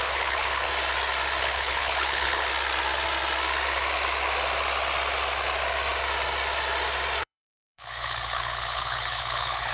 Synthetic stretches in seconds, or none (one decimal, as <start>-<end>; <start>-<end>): 0.0-0.7; 1.4-2.5; 7.2-9.7